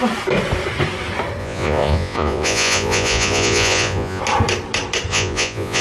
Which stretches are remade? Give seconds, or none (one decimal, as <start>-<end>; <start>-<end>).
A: 1.4-4.2; 5.1-5.8